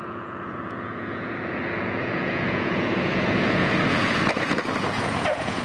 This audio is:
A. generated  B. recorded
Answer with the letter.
A